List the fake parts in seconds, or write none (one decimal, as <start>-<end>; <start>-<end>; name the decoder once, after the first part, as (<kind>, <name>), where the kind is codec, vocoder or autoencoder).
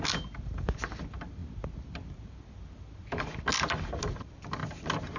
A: none